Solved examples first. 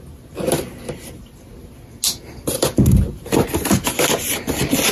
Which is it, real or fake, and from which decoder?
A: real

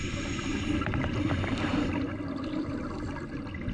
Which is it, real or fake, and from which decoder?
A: real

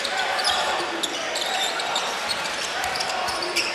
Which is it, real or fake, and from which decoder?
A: fake, vocoder, BigVGAN v2